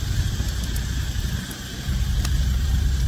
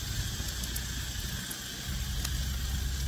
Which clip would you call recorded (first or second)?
second